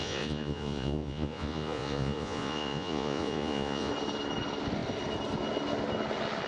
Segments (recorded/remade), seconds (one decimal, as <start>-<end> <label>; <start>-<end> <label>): 0.0-3.9 remade; 3.9-6.5 recorded